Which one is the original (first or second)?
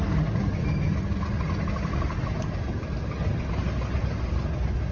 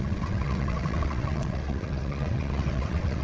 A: first